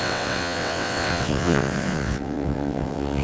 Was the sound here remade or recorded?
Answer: remade